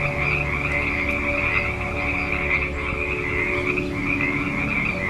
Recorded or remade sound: recorded